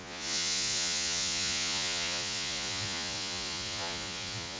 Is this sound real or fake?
fake